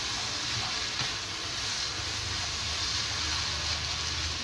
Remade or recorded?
recorded